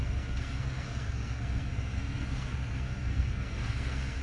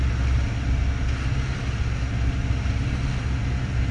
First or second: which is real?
second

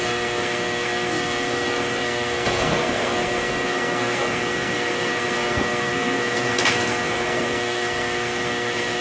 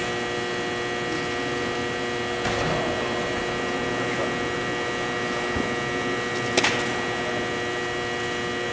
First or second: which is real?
second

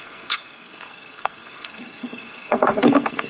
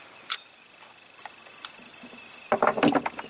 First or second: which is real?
second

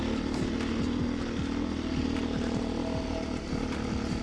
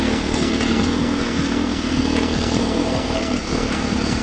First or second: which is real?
first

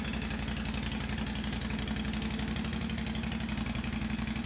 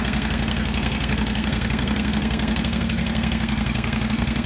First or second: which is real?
first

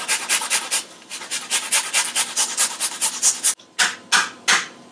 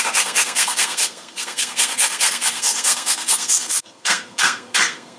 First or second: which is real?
first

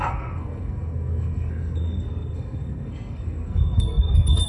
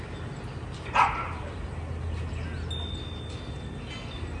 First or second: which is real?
second